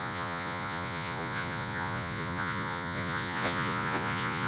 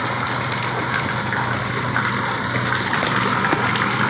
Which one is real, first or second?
second